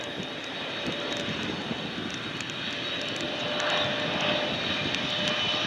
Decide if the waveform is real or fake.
real